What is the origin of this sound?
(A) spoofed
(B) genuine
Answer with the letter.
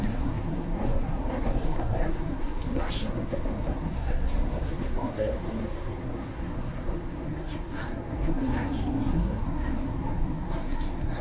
A